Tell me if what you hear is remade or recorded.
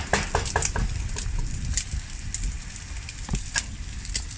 recorded